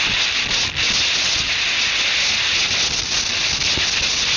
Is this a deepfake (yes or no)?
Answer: no